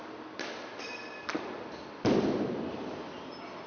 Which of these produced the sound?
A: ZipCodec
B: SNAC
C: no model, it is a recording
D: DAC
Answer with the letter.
C